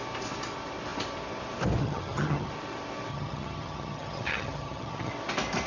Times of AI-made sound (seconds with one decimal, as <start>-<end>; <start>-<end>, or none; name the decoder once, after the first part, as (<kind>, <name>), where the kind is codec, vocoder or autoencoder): 1.8-2.5 (vocoder, HiFi-GAN); 3.1-5.1